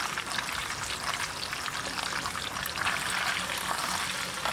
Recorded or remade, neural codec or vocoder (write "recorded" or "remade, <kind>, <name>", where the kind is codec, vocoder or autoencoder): recorded